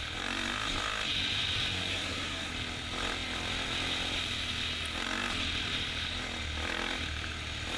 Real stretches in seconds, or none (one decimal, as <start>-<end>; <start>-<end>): 0.0-1.9; 2.5-7.8